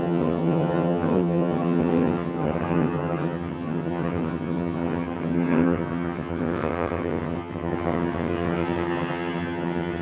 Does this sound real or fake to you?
fake